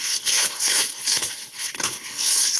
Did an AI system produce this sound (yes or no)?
yes